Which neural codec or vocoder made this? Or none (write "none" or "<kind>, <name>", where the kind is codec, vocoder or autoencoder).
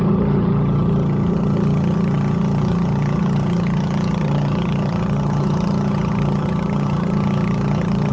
vocoder, HiFi-GAN